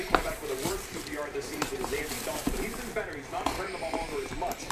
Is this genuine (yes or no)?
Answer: no